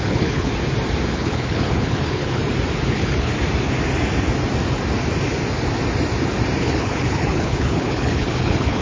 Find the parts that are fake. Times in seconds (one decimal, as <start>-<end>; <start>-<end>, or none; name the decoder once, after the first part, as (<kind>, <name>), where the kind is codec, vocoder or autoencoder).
0.0-0.5 (codec, HILCodec); 1.1-2.4; 2.9-3.3; 6.6-8.8